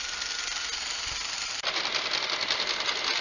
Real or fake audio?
real